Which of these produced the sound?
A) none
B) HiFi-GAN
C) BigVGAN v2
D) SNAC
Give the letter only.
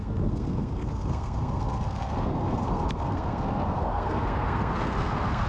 D